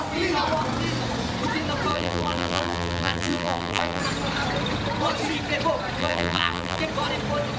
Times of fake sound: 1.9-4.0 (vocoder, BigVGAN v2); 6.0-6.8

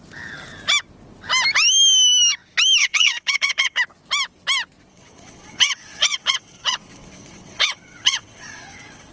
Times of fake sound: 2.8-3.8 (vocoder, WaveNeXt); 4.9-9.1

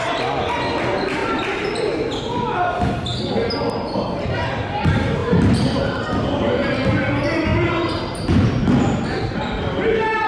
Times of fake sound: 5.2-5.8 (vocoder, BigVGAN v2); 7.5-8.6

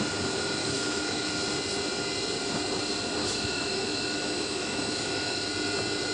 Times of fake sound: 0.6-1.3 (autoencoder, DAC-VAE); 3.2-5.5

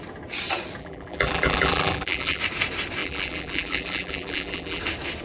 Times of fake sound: 0.8-2.4 (vocoder, BigVGAN v2); 3.0-4.8

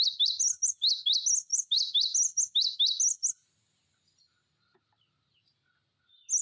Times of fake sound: none

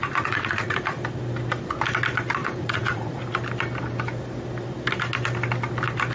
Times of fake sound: 0.0-0.8 (vocoder, Vocos); 2.4-3.2